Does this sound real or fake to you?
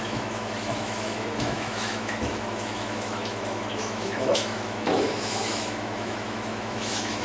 fake